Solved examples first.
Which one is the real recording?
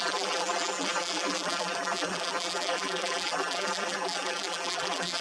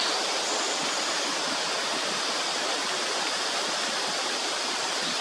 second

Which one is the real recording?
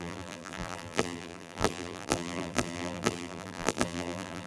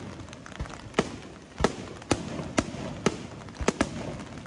second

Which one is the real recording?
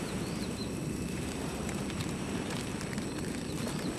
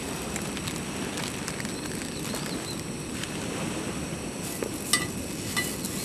second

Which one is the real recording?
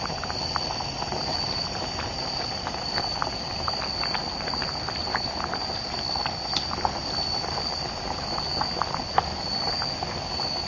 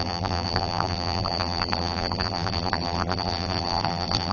first